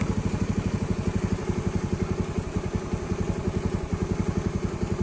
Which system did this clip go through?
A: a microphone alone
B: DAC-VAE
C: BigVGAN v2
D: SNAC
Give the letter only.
A